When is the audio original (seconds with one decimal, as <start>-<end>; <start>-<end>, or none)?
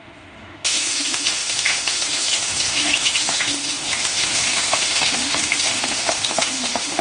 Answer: none